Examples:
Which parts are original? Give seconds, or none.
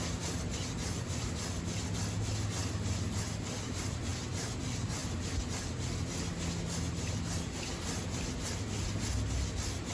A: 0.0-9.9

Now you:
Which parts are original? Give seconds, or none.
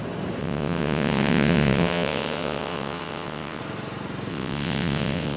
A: 0.0-0.4; 3.6-4.3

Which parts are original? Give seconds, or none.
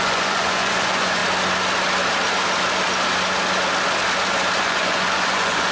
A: 1.2-4.6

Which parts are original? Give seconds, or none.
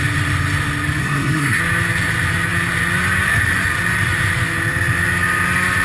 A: 0.0-1.0; 1.6-5.8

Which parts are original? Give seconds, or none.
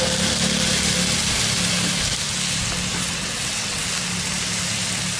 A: 0.0-3.0; 3.9-5.2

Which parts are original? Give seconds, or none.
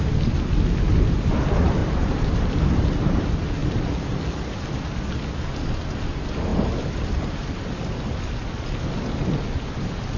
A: 0.0-1.8; 3.2-10.2